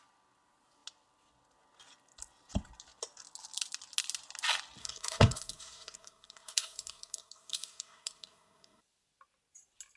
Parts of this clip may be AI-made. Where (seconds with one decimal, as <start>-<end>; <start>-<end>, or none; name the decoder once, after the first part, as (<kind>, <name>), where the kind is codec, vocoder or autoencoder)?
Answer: 4.8-8.8 (codec, SNAC)